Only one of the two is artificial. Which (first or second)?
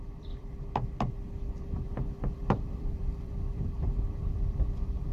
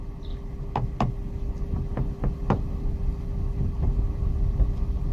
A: first